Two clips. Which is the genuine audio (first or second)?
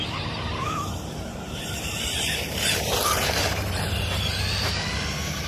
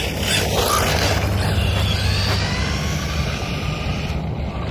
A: second